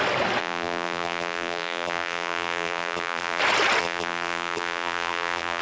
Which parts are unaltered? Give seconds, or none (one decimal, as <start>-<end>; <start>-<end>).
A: 0.0-0.4; 3.4-3.8